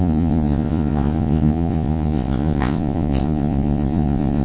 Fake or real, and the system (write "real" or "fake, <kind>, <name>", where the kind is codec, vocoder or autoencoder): fake, vocoder, Vocos